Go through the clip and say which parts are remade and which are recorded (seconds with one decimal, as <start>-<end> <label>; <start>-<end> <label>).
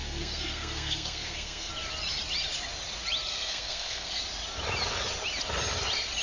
0.0-1.7 remade; 1.7-3.3 recorded; 3.3-4.2 remade; 4.2-6.2 recorded